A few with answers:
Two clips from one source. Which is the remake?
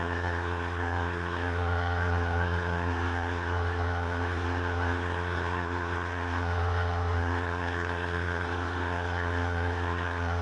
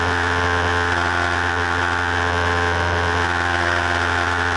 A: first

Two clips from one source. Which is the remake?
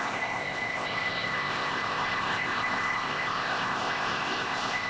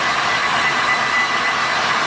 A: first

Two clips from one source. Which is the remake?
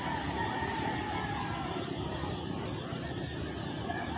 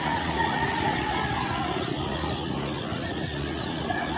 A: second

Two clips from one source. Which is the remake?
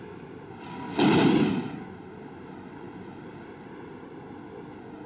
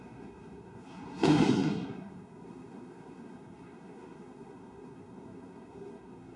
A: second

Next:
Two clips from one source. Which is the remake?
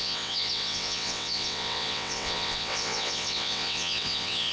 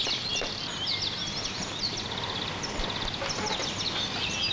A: first